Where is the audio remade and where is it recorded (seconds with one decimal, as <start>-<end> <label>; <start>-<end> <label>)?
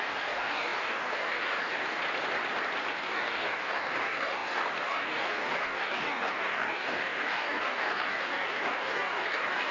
0.0-2.0 remade; 2.0-2.9 recorded; 2.9-9.7 remade